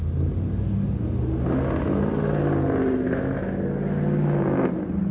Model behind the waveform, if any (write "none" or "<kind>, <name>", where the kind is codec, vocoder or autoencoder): none